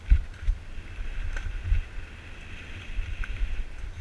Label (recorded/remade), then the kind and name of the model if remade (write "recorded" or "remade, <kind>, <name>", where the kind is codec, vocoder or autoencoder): recorded